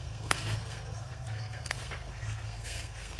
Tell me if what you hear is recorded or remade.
remade